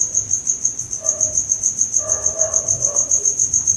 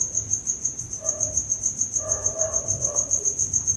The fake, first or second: second